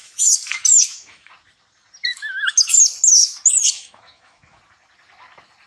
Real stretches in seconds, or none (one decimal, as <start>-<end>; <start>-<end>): 1.3-2.1; 4.6-5.7